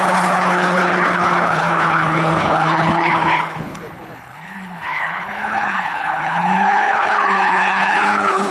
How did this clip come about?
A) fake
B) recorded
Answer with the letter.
A